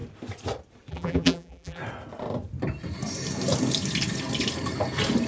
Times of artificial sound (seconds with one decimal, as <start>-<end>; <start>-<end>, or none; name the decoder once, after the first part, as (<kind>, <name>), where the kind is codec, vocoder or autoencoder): 0.9-1.8 (vocoder, BigVGAN v2)